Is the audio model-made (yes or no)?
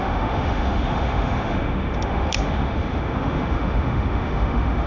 yes